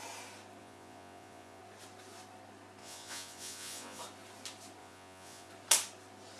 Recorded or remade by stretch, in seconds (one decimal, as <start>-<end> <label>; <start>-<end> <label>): 0.0-0.6 recorded; 0.6-1.6 remade; 1.6-2.8 recorded; 2.8-4.0 remade; 4.0-4.8 recorded; 4.8-5.5 remade; 5.5-6.4 recorded

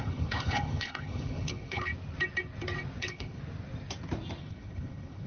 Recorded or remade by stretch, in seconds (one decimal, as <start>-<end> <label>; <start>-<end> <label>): 0.0-1.9 remade; 1.9-3.0 recorded; 3.0-3.4 remade; 3.4-4.4 recorded; 4.4-5.3 remade

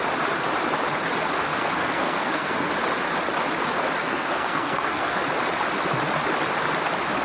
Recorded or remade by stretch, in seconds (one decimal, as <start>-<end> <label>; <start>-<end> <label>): 0.0-1.5 recorded; 1.5-2.7 remade; 2.7-4.0 recorded; 4.0-5.2 remade; 5.2-7.2 recorded

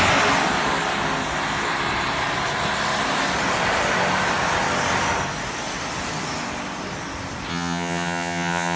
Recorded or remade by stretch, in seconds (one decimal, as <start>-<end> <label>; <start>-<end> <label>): 0.0-7.5 recorded; 7.5-8.8 remade

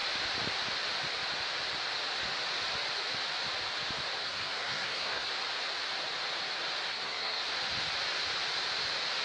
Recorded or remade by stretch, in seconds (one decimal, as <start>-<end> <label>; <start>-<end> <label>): 0.0-4.2 recorded; 4.2-5.3 remade; 5.3-6.9 recorded; 6.9-7.4 remade; 7.4-9.2 recorded

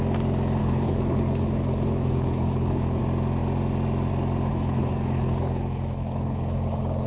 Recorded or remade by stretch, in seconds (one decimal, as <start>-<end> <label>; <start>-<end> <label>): 0.0-0.6 recorded; 0.6-3.0 remade; 3.0-4.5 recorded; 4.5-7.1 remade

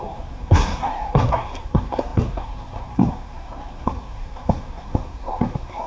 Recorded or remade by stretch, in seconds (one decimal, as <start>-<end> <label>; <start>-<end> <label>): 0.0-5.9 remade

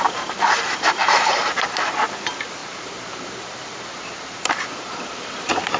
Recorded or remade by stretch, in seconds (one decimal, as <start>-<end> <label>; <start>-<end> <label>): 0.0-1.0 recorded; 1.0-1.5 remade; 1.5-2.6 recorded; 2.6-5.8 remade